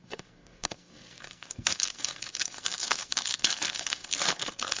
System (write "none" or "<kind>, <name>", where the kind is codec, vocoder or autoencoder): codec, SNAC